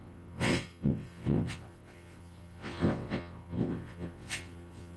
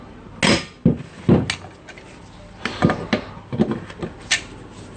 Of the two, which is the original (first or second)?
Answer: second